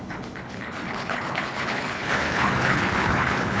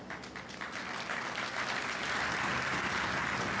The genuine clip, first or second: second